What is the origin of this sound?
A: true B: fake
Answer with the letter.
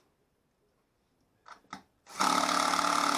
A